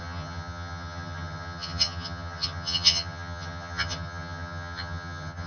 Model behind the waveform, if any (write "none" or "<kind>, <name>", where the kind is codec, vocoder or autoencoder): vocoder, HiFi-GAN